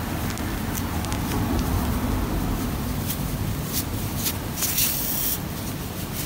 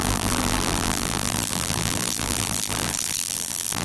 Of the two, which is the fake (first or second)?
second